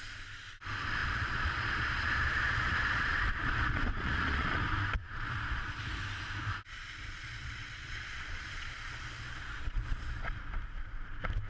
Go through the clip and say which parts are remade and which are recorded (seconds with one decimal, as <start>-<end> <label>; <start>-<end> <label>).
0.0-1.0 recorded; 1.0-4.6 remade; 4.6-5.0 recorded; 5.0-5.8 remade; 5.8-7.2 recorded; 7.2-10.4 remade; 10.4-11.5 recorded